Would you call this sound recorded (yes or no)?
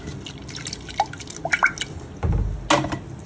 yes